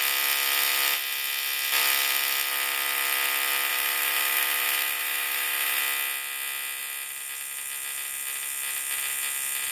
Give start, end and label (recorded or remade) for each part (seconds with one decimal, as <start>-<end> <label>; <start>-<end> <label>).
0.0-3.7 recorded; 3.7-5.8 remade; 5.8-9.7 recorded